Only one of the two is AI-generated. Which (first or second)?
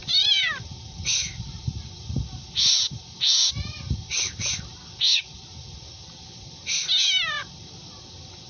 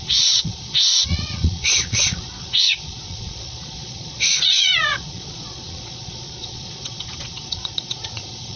second